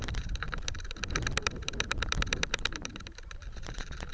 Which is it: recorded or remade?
remade